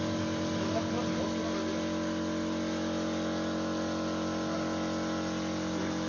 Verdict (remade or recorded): recorded